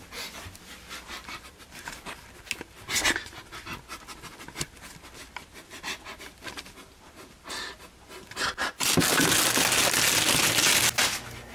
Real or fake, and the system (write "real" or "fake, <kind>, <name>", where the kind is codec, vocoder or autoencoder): real